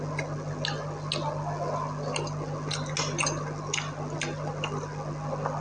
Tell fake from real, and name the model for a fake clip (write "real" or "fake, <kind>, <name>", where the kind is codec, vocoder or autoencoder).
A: real